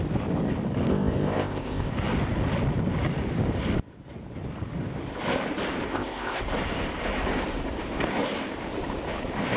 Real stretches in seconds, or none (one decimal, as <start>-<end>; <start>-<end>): 0.0-0.9; 1.9-5.9; 6.4-9.6